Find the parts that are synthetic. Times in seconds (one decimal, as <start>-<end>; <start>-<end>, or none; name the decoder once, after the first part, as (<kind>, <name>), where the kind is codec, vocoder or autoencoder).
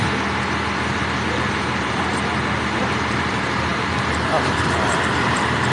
1.3-2.1 (vocoder, BigVGAN v2); 2.8-5.7